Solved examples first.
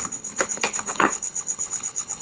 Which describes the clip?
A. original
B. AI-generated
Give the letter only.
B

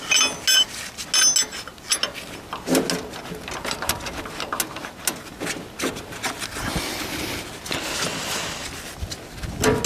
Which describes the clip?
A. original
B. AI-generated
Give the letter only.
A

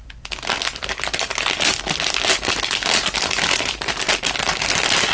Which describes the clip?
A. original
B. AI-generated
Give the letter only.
A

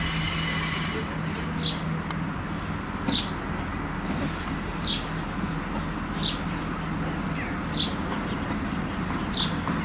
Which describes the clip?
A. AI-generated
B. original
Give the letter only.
B